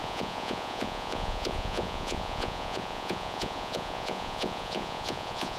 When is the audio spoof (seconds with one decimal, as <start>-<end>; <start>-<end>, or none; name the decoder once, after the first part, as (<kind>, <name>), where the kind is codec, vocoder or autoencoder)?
0.0-5.6 (vocoder, Vocos)